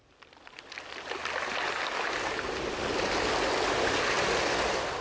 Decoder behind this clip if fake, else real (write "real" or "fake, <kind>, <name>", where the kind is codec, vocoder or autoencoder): real